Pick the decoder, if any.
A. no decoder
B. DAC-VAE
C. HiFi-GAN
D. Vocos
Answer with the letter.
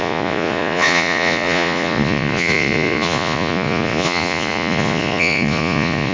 D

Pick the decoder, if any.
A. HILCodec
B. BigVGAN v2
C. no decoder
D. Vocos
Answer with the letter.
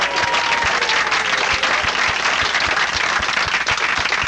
C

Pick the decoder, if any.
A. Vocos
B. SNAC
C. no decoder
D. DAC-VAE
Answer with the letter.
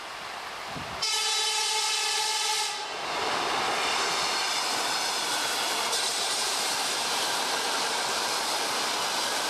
C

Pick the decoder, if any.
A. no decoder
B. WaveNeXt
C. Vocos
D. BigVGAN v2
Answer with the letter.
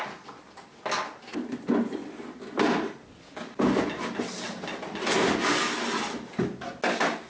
A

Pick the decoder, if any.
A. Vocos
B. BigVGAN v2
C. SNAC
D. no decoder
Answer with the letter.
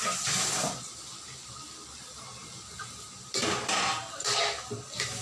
D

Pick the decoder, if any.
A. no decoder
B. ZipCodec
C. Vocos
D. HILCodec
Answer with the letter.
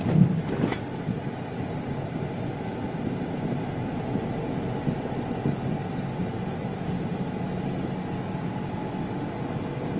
A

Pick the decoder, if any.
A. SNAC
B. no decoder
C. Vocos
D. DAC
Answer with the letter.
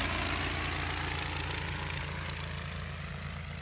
B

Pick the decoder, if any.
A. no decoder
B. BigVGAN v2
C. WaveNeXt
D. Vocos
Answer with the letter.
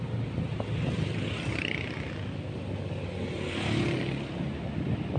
A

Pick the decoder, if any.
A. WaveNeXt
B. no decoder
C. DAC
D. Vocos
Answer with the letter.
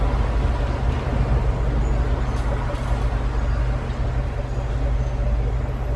B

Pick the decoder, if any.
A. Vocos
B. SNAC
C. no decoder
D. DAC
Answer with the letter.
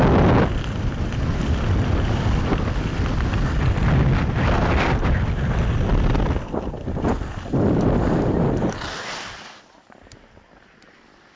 C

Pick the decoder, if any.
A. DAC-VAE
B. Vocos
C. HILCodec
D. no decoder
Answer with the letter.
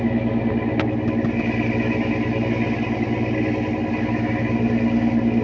D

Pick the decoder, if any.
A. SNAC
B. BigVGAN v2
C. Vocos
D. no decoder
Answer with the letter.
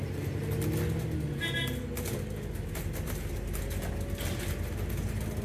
D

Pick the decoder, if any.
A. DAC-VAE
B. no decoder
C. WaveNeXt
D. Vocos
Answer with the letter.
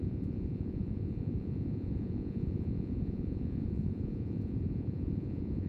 D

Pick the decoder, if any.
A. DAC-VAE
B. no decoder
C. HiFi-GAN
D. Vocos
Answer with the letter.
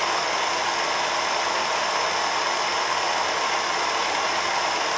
B